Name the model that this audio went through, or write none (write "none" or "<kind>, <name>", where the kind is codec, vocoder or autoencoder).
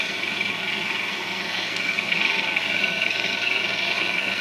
codec, SNAC